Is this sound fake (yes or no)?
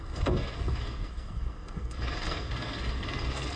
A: yes